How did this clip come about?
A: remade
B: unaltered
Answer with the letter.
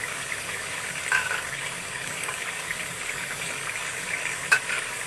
A